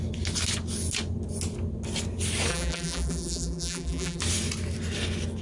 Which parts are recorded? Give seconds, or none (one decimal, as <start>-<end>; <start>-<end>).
0.0-2.5; 4.2-5.4